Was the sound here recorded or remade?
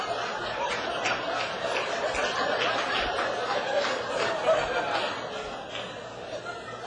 recorded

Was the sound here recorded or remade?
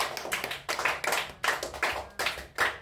recorded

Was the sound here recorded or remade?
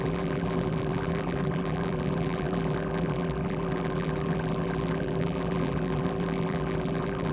remade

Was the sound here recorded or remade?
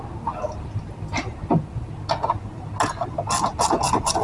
recorded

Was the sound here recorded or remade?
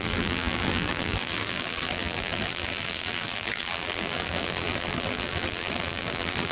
remade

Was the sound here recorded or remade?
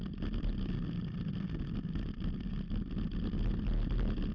recorded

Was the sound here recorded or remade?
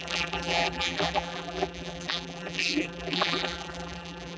remade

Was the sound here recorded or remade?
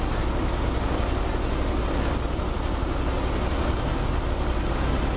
recorded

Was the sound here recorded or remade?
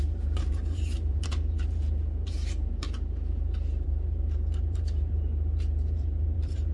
remade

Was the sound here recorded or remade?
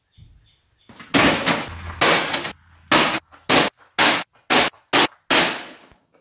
recorded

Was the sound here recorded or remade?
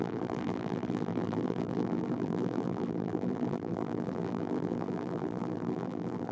remade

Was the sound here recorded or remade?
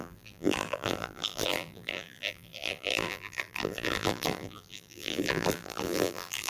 remade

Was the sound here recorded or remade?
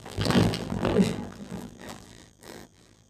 remade